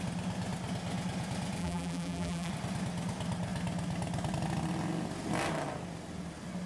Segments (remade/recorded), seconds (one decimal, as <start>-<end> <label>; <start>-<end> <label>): 0.0-1.6 recorded; 1.6-2.5 remade; 2.5-6.7 recorded